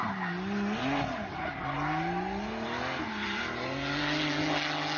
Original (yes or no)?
yes